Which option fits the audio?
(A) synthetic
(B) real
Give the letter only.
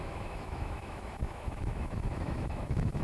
A